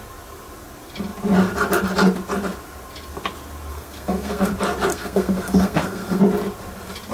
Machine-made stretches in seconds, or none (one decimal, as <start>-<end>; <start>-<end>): 3.7-4.5; 4.9-6.2